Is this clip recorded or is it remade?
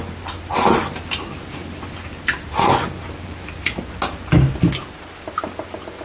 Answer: recorded